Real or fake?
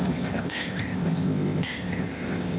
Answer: fake